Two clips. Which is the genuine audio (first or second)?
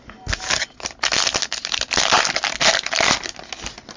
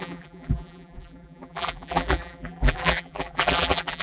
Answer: first